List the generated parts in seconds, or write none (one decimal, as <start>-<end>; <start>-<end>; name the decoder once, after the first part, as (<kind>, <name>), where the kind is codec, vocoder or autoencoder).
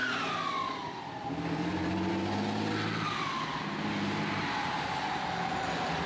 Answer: 0.0-2.1 (vocoder, BigVGAN v2)